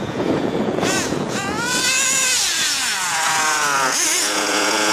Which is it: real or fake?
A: fake